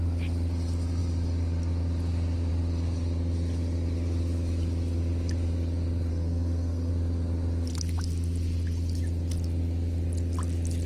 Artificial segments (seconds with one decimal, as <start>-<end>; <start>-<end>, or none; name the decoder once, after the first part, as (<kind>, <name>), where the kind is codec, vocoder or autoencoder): 6.1-6.9 (codec, SNAC)